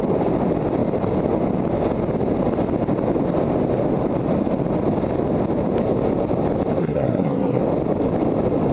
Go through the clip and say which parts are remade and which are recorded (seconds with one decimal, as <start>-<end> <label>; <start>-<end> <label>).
0.0-6.8 recorded; 6.8-7.6 remade; 7.6-8.7 recorded